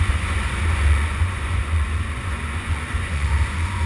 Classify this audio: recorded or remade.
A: remade